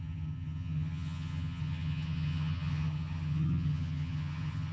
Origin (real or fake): fake